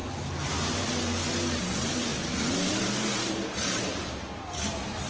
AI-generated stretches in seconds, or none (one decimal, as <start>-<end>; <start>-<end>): 1.6-2.1; 2.8-5.1